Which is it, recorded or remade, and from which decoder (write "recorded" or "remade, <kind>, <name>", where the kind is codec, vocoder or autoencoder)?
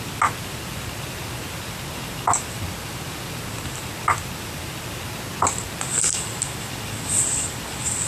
recorded